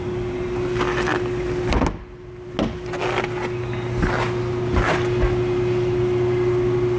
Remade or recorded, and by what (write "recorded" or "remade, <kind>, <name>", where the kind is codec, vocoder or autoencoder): recorded